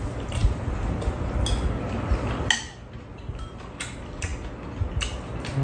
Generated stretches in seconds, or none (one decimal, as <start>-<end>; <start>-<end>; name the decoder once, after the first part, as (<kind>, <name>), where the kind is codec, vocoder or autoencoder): none